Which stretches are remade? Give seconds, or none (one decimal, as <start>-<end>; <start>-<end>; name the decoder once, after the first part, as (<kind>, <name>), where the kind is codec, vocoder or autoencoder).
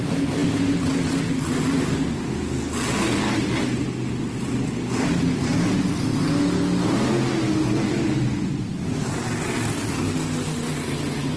none